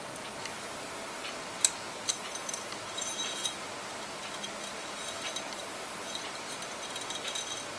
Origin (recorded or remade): recorded